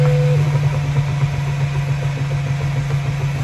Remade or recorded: recorded